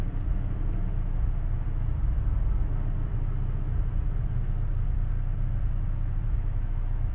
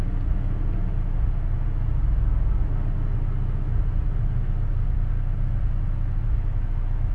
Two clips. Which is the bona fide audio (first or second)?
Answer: second